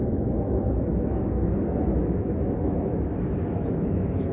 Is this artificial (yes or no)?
yes